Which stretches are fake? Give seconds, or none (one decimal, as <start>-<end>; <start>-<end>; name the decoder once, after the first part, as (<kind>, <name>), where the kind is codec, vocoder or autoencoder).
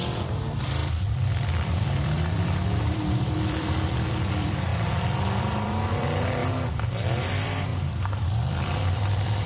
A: 0.0-4.7 (vocoder, BigVGAN v2); 5.4-6.4; 7.2-9.5